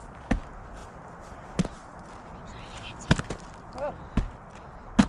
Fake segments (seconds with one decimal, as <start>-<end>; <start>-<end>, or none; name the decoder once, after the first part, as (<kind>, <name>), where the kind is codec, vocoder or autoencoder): none